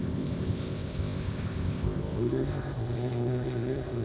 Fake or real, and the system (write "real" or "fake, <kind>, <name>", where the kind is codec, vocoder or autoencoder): fake, codec, ZipCodec